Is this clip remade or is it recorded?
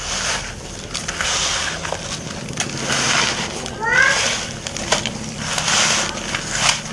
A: recorded